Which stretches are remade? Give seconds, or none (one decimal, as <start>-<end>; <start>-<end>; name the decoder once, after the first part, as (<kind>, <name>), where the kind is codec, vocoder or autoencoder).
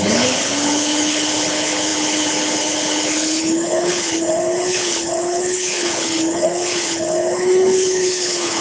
0.0-8.6 (codec, HILCodec)